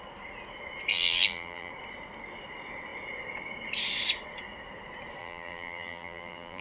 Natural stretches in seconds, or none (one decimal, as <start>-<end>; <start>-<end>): 0.0-0.9; 1.7-5.2